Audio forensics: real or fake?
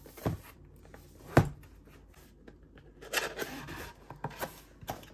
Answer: real